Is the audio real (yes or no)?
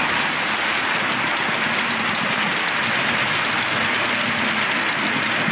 yes